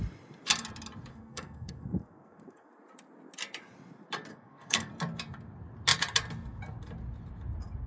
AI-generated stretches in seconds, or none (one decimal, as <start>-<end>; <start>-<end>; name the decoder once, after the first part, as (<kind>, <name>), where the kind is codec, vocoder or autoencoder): 1.1-2.7 (codec, SNAC); 4.3-4.9